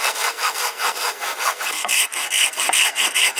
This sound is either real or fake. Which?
fake